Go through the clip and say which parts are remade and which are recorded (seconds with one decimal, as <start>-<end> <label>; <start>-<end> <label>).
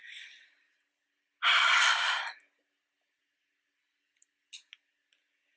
0.0-5.6 recorded